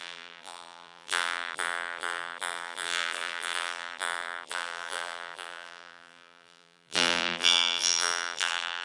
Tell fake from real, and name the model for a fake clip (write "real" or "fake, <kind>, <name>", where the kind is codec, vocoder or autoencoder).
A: fake, vocoder, BigVGAN v2